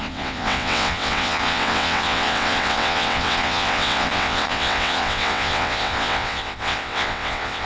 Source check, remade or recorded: remade